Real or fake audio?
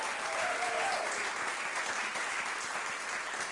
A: real